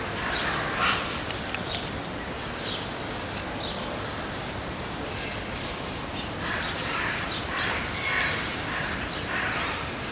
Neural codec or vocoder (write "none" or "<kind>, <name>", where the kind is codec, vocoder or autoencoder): none